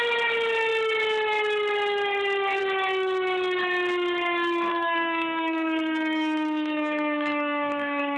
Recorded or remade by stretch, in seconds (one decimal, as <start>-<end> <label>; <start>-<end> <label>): 0.0-4.7 recorded; 4.7-8.2 remade